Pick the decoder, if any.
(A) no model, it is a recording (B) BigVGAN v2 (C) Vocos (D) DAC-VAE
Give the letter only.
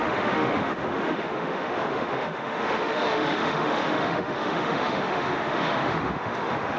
D